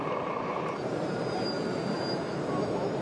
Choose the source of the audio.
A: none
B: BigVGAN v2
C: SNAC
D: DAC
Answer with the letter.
A